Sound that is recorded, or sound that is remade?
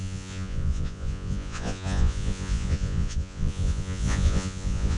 remade